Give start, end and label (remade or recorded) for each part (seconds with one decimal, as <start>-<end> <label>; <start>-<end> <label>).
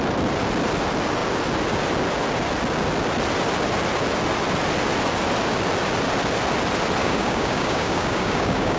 0.0-7.0 recorded; 7.0-8.8 remade